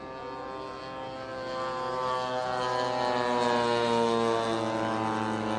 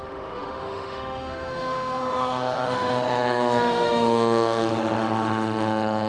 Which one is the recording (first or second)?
first